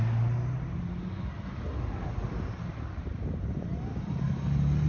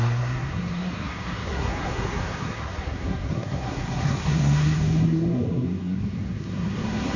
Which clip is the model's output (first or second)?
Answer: second